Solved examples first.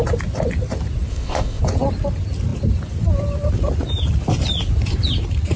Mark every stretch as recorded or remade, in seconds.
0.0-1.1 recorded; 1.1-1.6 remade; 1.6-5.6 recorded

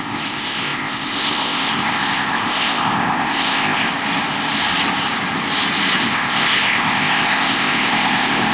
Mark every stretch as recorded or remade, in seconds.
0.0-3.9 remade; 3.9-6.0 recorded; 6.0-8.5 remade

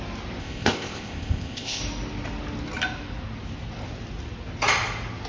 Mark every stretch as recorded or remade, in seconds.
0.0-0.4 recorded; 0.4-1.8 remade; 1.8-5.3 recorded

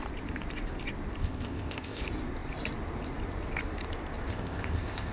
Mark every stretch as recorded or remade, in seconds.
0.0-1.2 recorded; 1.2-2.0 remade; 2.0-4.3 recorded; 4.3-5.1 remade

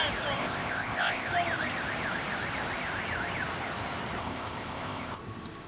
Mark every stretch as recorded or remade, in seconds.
0.0-0.4 recorded; 0.4-1.3 remade; 1.3-4.2 recorded; 4.2-5.2 remade; 5.2-5.7 recorded

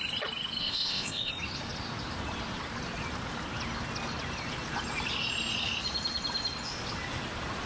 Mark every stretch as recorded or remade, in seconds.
0.0-0.6 recorded; 0.6-1.3 remade; 1.3-7.7 recorded